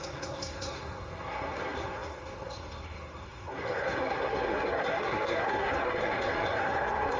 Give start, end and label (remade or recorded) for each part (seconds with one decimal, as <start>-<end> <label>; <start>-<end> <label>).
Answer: 0.0-7.2 remade